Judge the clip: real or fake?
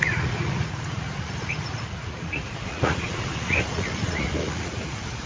fake